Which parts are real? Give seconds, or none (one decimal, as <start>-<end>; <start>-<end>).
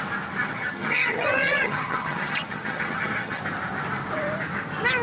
0.0-0.4; 3.4-5.0